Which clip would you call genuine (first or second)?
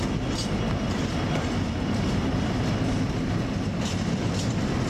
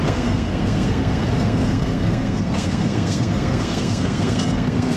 first